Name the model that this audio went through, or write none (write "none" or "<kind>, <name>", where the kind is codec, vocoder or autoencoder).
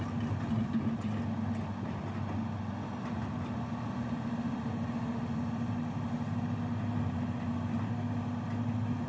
none